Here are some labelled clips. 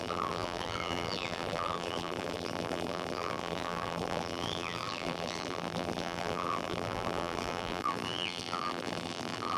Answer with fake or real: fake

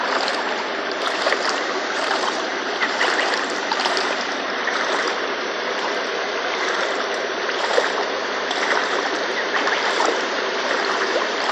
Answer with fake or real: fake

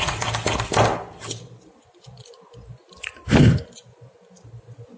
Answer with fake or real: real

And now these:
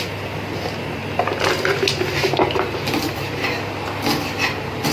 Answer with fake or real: real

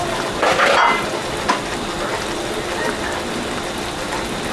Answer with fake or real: real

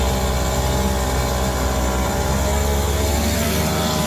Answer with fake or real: real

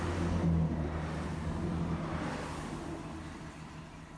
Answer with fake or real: real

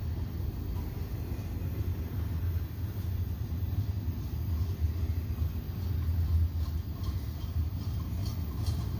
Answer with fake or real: real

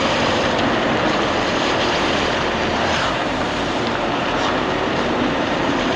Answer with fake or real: fake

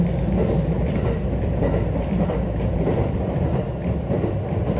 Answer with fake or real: real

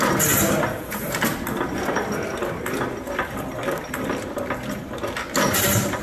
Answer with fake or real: real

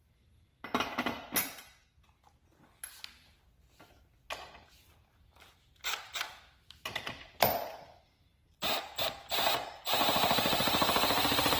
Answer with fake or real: real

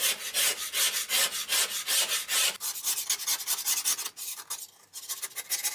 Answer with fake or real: real